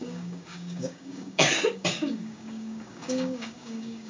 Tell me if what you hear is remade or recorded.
remade